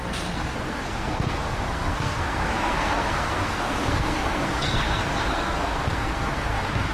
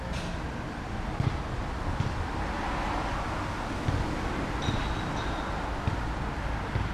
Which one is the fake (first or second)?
first